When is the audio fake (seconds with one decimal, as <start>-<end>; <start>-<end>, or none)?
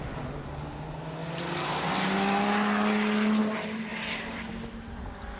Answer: none